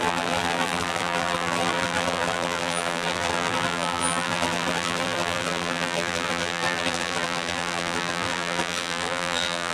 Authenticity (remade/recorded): remade